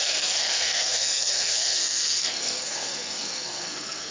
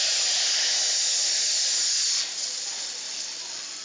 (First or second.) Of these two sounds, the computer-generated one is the first